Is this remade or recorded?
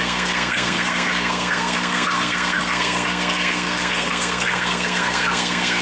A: remade